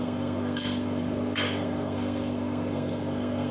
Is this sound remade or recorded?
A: remade